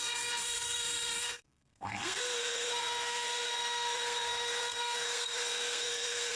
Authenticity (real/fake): fake